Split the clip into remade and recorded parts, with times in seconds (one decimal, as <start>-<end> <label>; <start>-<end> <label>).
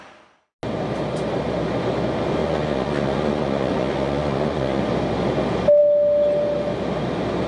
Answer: 0.0-2.4 recorded; 2.4-4.8 remade; 4.8-7.5 recorded